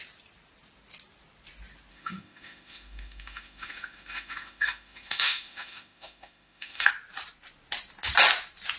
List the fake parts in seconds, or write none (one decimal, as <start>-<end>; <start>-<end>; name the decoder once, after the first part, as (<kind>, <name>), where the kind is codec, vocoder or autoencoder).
1.9-6.9 (autoencoder, DAC-VAE)